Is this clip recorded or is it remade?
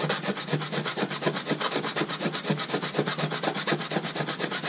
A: recorded